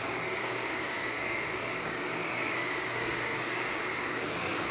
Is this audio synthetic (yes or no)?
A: yes